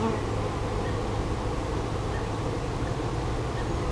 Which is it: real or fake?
real